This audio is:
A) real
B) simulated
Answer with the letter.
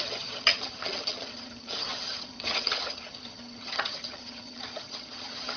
B